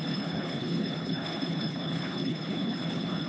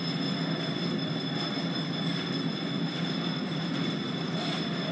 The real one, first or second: second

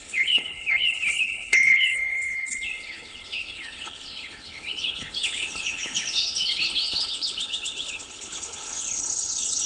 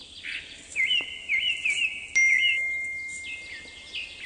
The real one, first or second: second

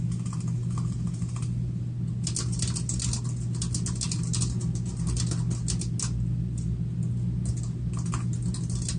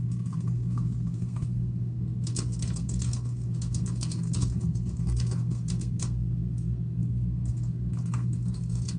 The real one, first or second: first